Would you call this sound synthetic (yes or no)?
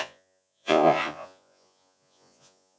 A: yes